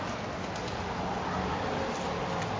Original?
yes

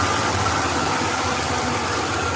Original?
yes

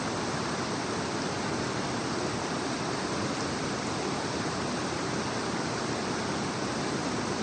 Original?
yes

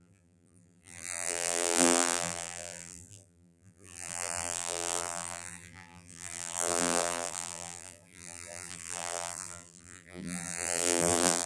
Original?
no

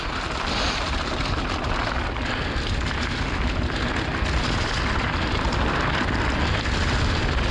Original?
yes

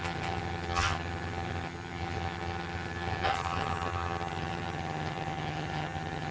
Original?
no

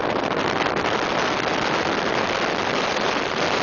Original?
yes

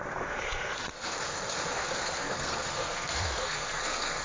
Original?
no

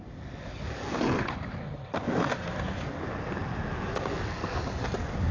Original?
yes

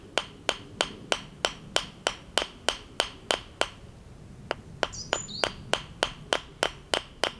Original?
yes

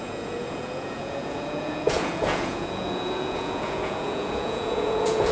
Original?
no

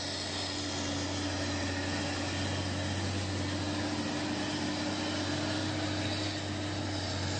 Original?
yes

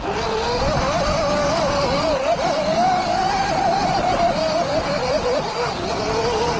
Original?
yes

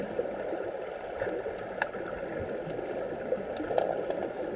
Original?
yes